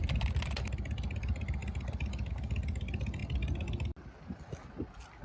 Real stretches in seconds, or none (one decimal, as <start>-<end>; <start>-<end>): 0.0-1.6; 2.3-5.2